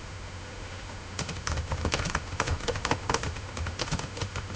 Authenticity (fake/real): fake